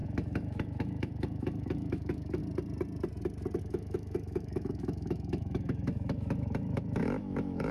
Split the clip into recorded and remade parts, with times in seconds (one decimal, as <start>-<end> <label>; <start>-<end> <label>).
0.0-2.4 remade; 2.4-3.6 recorded; 3.6-7.7 remade